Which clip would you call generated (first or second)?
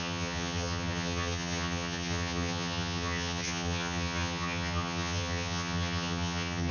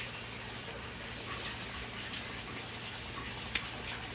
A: first